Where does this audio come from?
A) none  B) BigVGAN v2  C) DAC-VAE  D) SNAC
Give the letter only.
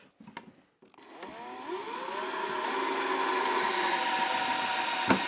A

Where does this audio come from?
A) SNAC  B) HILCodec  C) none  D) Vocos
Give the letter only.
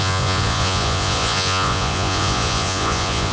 D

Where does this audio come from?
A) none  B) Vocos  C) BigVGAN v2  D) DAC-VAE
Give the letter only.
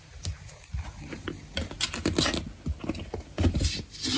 A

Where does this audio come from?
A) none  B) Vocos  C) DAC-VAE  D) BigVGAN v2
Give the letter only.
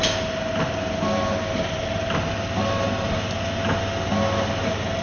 A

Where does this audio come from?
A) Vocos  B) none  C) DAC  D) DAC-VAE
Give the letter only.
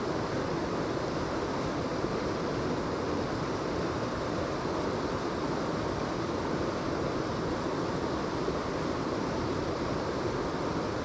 B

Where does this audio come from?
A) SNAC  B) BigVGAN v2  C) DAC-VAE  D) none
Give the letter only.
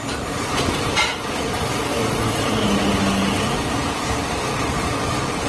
D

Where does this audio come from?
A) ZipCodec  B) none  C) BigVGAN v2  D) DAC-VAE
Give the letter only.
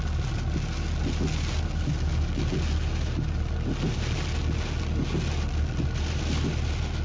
B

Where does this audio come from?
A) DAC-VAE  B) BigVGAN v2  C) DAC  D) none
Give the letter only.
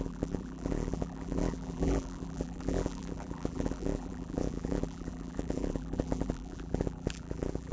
B